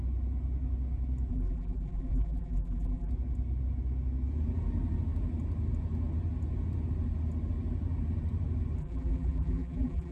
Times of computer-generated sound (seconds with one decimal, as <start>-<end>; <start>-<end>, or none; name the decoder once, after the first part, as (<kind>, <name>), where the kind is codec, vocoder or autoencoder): 1.3-3.1 (vocoder, BigVGAN v2); 8.8-10.1